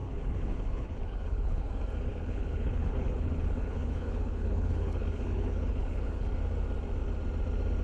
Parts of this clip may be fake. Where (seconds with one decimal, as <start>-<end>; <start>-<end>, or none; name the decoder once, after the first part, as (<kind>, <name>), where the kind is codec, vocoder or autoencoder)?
0.0-1.7 (codec, HILCodec); 2.1-6.3